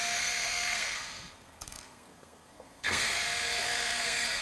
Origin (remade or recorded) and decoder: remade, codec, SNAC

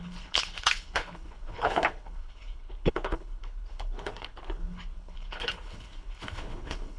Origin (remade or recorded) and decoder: remade, codec, HILCodec